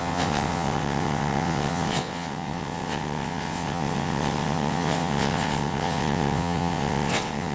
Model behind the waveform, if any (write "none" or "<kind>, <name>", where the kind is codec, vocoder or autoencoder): vocoder, WaveNeXt